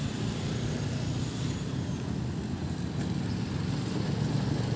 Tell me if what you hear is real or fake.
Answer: real